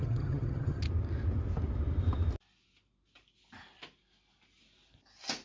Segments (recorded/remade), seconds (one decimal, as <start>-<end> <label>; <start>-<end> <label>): 0.0-0.8 remade; 0.8-5.4 recorded